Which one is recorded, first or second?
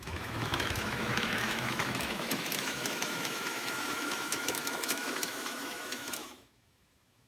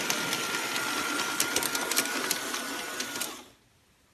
second